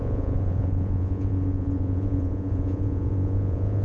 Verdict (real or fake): fake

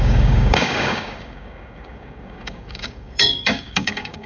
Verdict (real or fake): fake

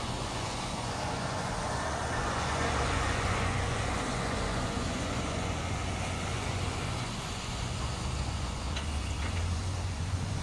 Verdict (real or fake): fake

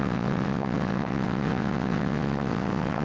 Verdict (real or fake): fake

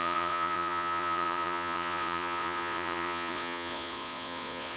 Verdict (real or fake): fake